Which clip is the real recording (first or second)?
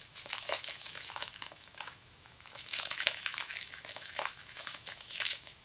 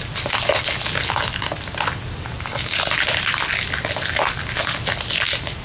second